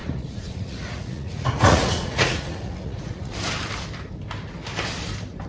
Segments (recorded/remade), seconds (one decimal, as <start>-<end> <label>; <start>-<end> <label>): 0.0-3.3 remade; 3.3-5.5 recorded

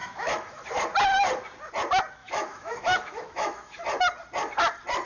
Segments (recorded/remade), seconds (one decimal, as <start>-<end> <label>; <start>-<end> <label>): 0.0-0.7 remade; 0.7-2.2 recorded; 2.2-3.8 remade; 3.8-5.0 recorded